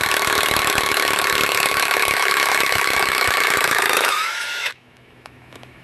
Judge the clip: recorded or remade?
remade